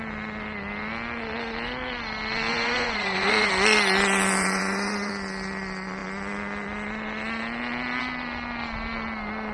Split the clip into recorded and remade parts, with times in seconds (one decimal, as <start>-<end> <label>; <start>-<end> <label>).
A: 0.0-2.5 recorded; 2.5-3.5 remade; 3.5-4.4 recorded; 4.4-5.1 remade; 5.1-9.5 recorded